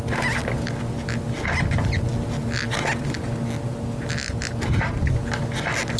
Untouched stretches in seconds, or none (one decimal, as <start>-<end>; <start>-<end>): 0.0-6.0